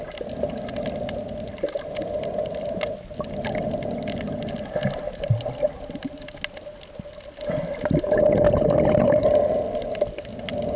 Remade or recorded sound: recorded